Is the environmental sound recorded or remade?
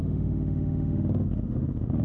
remade